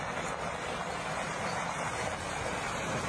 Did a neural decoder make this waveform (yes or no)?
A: no